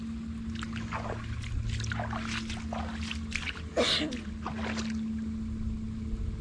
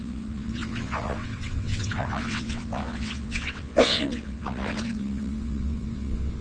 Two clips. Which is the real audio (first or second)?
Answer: first